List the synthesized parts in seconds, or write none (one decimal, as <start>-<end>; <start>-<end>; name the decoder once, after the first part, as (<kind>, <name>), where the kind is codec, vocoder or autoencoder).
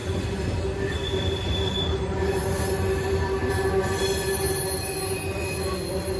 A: none